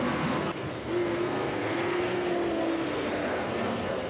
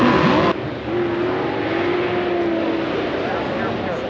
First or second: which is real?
second